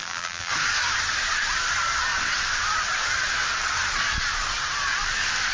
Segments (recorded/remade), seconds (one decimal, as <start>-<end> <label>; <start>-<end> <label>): 0.0-0.5 remade; 0.5-5.5 recorded